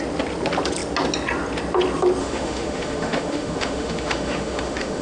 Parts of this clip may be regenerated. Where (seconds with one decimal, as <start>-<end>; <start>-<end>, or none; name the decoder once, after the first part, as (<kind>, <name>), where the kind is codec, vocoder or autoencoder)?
2.2-5.0 (autoencoder, DAC-VAE)